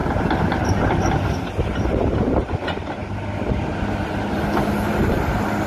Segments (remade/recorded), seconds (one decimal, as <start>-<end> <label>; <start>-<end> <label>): 0.0-5.7 recorded